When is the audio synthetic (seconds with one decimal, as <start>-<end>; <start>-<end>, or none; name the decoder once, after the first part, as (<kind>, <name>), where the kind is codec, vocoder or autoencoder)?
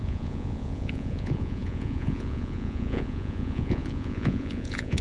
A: 0.0-5.0 (vocoder, Vocos)